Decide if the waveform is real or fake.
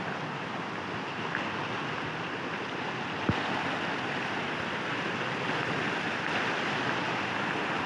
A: real